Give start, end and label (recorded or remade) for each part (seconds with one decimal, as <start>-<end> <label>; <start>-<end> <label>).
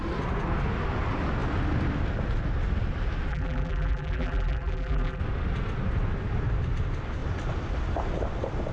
0.0-3.3 recorded; 3.3-5.2 remade; 5.2-8.7 recorded